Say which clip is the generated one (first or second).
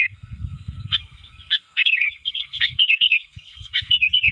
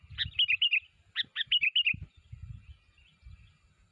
first